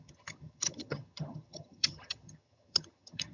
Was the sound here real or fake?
fake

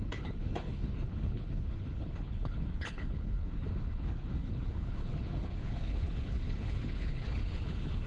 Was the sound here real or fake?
fake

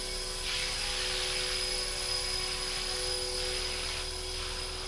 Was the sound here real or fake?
real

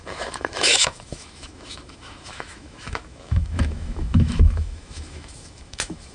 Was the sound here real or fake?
fake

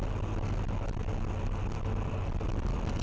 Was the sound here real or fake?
real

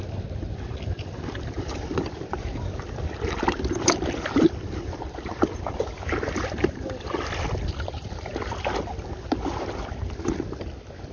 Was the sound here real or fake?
real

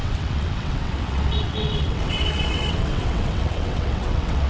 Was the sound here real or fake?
fake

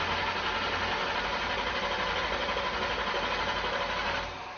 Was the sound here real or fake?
real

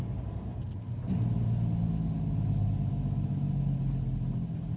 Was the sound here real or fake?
real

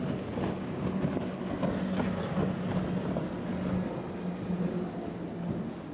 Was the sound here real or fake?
real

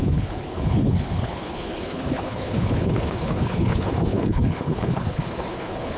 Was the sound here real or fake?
fake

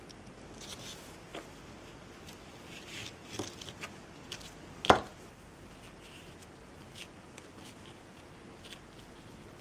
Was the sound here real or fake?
real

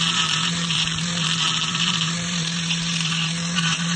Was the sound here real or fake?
fake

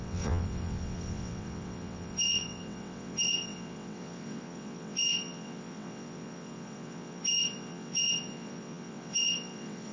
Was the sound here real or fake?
fake